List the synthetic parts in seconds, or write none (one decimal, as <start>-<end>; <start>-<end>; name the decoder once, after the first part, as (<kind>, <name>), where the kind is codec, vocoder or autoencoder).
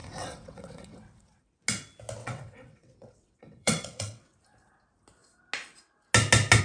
0.0-1.4 (vocoder, WaveNeXt); 2.2-4.4